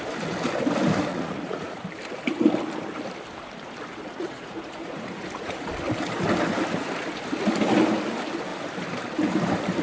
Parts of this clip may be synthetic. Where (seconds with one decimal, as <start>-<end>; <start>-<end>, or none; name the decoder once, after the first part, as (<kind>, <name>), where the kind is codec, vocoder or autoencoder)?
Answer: 1.1-1.8 (vocoder, Vocos); 3.9-5.7